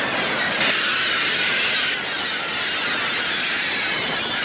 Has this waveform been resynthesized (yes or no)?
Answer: no